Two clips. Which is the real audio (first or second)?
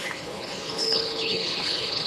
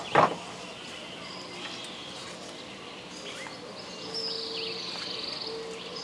second